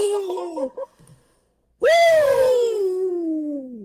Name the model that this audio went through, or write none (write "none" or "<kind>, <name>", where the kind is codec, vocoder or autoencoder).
codec, SNAC